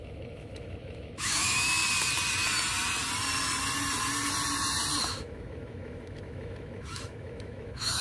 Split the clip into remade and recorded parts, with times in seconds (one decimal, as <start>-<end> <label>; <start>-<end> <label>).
0.0-1.8 remade; 1.8-5.0 recorded; 5.0-8.0 remade